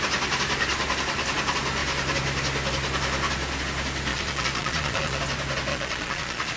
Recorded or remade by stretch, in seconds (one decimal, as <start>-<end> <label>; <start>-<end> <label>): 0.0-4.1 recorded; 4.1-5.2 remade; 5.2-5.7 recorded; 5.7-6.6 remade